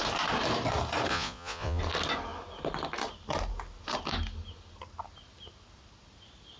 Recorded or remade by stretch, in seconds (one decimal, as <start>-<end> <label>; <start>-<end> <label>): 0.0-1.1 recorded; 1.1-1.8 remade; 1.8-6.6 recorded

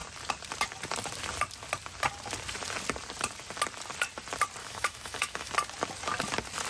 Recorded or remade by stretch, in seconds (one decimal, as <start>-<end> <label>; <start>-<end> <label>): 0.0-4.6 recorded; 4.6-5.5 remade; 5.5-6.7 recorded

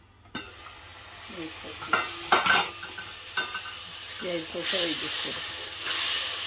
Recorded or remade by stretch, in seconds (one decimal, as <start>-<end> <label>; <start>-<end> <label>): 0.0-6.5 recorded